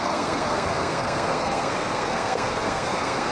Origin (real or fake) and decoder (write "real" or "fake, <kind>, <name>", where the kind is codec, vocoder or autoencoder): fake, codec, SNAC